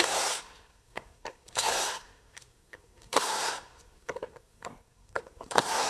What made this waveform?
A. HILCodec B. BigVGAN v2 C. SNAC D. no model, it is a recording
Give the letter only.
C